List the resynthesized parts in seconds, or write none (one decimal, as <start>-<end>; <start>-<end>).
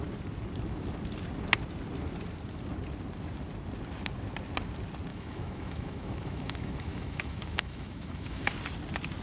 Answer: 5.1-8.5